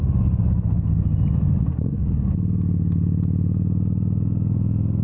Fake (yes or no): no